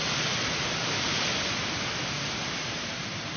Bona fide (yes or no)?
yes